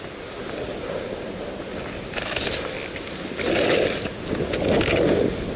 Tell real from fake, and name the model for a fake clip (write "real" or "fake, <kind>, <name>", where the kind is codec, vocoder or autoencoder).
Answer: real